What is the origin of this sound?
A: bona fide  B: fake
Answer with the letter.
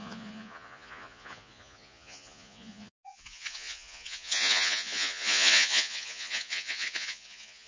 B